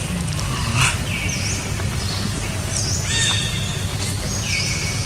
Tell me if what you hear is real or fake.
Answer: real